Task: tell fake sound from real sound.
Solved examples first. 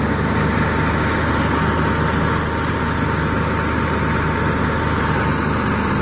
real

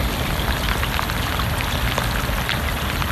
real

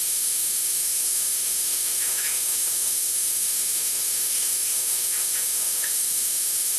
fake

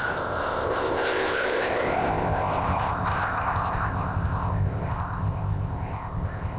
fake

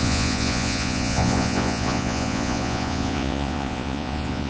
fake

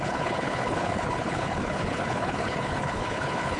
fake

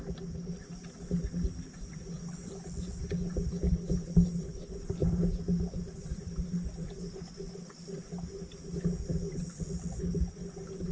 real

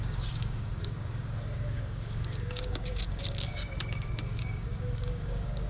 fake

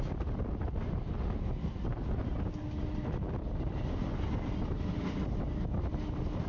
real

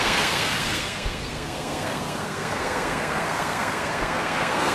fake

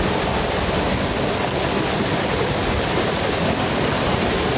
real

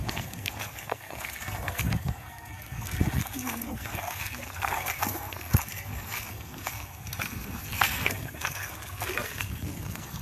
fake